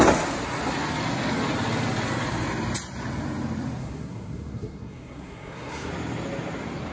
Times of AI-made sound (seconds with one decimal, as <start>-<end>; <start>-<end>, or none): 3.8-5.9